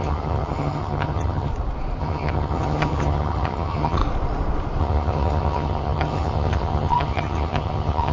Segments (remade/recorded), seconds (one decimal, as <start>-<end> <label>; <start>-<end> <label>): 0.0-1.5 remade; 1.5-2.0 recorded; 2.0-4.0 remade; 4.0-4.8 recorded; 4.8-8.1 remade